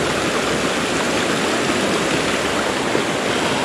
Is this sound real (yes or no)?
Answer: yes